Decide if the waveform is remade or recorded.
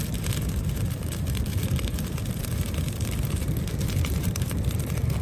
remade